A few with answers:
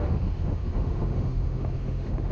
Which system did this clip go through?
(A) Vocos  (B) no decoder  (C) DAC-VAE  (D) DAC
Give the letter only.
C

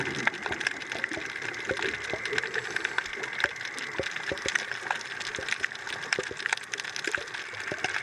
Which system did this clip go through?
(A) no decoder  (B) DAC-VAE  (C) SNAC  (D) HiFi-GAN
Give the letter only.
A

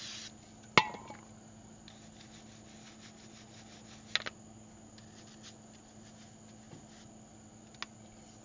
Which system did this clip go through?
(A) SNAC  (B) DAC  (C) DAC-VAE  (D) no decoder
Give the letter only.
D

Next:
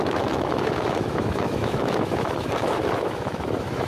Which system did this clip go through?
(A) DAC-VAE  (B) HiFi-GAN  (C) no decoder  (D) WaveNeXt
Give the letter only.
A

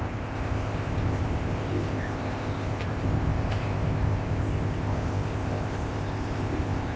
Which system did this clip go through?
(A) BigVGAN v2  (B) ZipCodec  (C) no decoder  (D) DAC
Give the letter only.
B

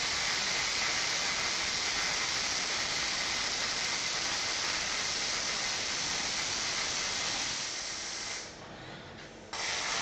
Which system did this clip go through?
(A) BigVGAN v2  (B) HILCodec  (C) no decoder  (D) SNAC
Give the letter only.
A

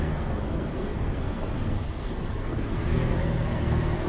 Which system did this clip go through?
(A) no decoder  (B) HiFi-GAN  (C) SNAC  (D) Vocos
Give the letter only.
C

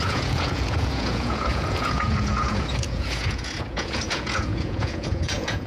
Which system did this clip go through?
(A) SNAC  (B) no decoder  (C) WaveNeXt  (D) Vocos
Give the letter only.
D